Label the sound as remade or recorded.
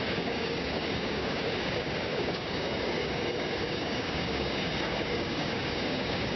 remade